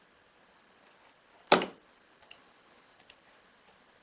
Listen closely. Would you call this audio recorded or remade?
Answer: recorded